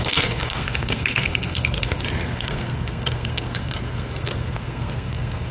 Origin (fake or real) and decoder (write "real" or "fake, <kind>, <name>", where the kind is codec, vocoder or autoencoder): fake, codec, SNAC